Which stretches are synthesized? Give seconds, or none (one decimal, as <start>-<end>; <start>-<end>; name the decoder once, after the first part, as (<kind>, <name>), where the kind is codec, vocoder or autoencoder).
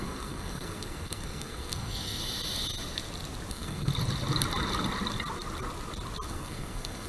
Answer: 0.0-2.2 (codec, SNAC); 3.5-3.9; 6.3-7.1